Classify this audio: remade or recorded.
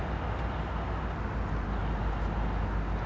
recorded